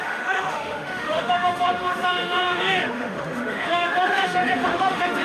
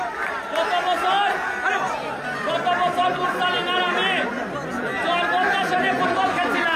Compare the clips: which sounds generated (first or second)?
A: first